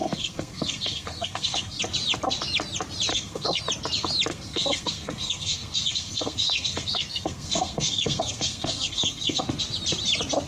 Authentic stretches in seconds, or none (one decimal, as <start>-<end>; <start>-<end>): 1.8-3.1; 3.6-4.3; 9.4-10.5